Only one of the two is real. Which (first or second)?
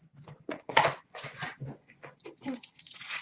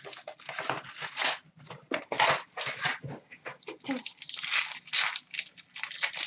second